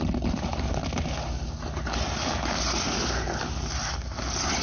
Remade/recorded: recorded